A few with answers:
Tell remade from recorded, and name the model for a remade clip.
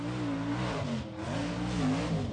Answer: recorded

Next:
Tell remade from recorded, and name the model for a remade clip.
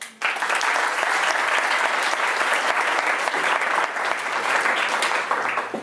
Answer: recorded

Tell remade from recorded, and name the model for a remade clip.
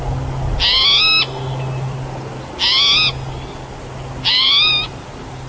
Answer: recorded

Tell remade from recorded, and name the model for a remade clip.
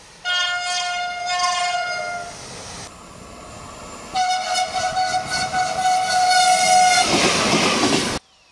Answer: recorded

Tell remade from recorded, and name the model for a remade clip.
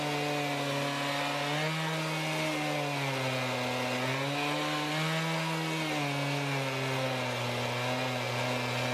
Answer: recorded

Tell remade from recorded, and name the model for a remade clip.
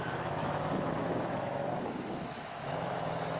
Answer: remade, autoencoder, DAC-VAE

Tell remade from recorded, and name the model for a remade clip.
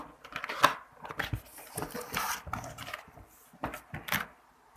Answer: recorded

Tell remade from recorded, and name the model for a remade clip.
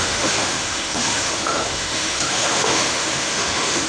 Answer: remade, autoencoder, DAC-VAE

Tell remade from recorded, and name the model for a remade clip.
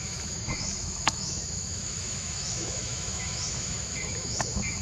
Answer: remade, autoencoder, DAC-VAE